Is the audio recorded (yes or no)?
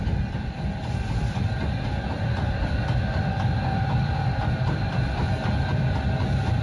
yes